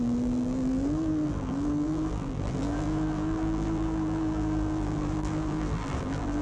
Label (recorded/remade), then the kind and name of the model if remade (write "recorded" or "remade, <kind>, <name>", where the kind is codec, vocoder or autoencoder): remade, vocoder, BigVGAN v2